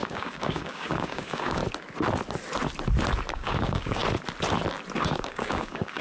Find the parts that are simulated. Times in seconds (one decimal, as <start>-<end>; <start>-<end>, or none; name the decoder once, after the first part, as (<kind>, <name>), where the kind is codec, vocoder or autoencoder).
0.0-1.6 (codec, DAC); 3.3-4.0; 5.0-6.0